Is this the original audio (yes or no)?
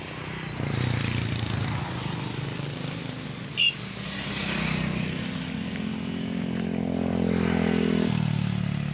yes